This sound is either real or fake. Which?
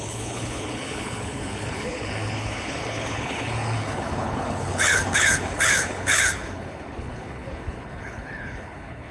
fake